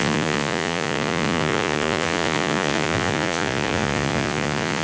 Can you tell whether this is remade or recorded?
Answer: remade